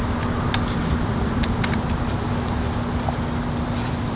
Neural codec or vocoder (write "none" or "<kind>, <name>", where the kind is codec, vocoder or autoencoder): none